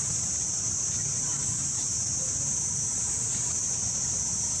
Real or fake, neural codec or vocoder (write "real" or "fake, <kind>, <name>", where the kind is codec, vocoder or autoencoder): fake, vocoder, BigVGAN v2